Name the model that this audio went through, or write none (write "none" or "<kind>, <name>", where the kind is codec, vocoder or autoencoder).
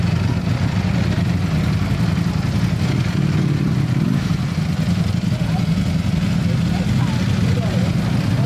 none